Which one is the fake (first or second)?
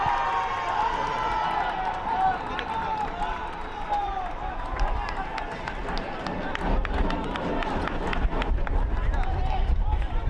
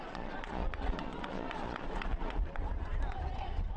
second